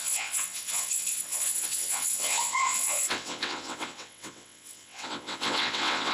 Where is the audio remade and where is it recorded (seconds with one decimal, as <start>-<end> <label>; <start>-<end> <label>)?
0.0-6.1 remade